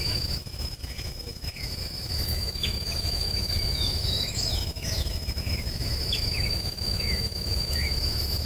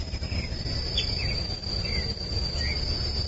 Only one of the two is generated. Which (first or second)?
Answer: first